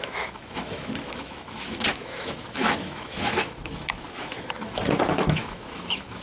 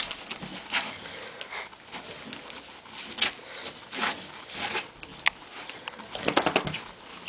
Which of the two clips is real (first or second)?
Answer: second